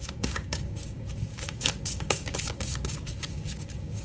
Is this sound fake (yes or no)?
yes